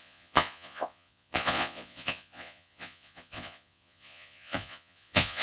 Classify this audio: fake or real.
fake